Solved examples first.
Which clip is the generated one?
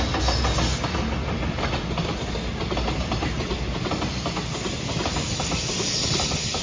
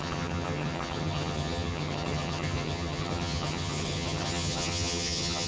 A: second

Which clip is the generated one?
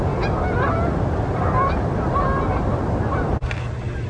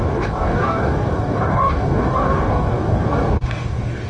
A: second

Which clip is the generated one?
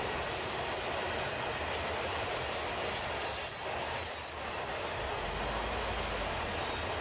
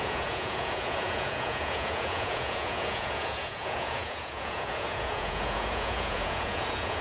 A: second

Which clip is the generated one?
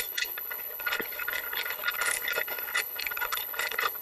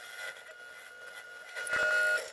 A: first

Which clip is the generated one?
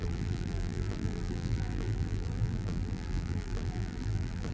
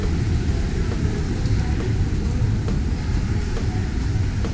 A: first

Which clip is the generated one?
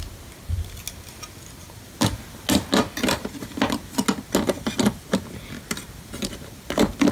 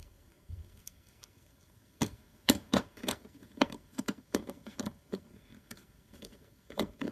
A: second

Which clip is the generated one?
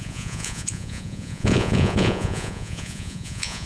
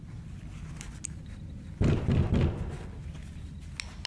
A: first